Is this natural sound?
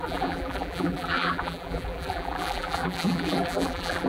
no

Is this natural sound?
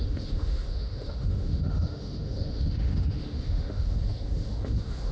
no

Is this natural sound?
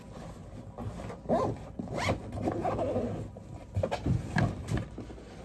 yes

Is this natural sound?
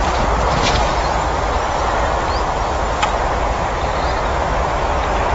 yes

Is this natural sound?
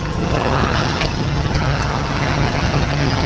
no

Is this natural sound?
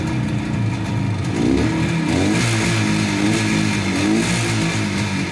yes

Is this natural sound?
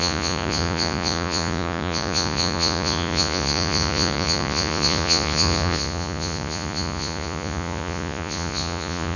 no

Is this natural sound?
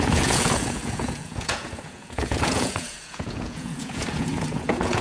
no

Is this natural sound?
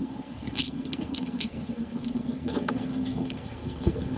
no